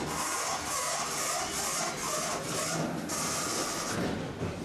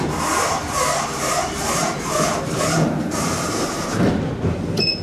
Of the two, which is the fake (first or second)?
second